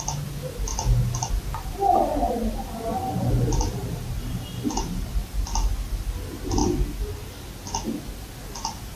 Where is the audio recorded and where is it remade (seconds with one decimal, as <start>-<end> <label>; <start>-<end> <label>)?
0.0-3.8 recorded; 3.8-5.1 remade; 5.1-9.0 recorded